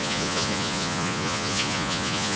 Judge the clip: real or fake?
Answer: fake